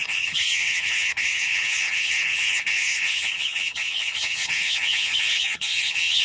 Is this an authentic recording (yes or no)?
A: no